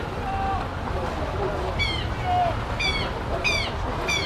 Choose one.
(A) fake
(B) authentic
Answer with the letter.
B